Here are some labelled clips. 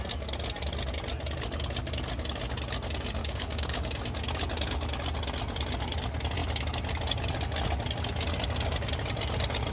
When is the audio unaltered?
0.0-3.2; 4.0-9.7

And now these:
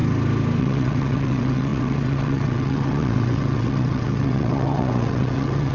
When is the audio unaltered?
0.0-0.6

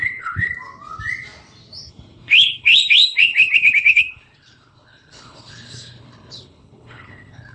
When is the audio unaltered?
0.5-1.9